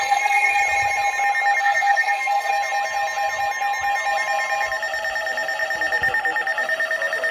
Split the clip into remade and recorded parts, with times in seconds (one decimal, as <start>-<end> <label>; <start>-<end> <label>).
0.0-0.6 remade; 0.6-1.6 recorded; 1.6-2.5 remade; 2.5-7.3 recorded